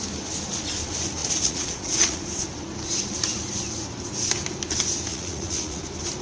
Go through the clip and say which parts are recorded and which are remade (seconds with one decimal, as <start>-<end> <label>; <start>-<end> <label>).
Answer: 0.0-1.2 recorded; 1.2-2.2 remade; 2.2-5.1 recorded; 5.1-5.8 remade; 5.8-6.2 recorded